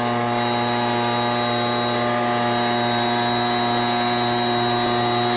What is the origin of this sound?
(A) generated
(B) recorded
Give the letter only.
B